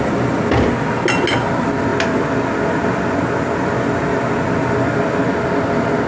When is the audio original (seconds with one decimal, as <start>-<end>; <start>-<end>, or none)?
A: 0.0-6.1

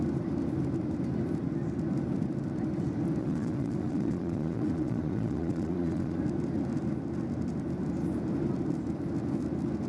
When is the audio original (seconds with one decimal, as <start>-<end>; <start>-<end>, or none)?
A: 0.0-3.2; 6.2-9.9

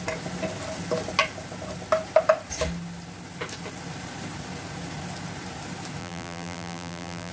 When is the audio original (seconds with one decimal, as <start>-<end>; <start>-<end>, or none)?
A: 0.0-6.0

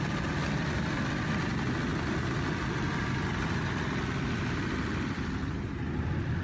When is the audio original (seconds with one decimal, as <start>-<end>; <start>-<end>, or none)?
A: 1.5-2.4